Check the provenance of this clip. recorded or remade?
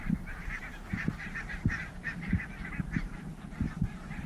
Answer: remade